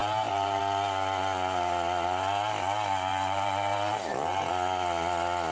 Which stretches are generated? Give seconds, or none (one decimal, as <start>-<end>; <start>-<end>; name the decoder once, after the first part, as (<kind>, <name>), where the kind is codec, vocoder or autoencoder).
0.0-0.6 (vocoder, BigVGAN v2); 3.1-4.5